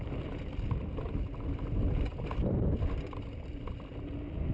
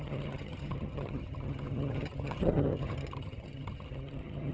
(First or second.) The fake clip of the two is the second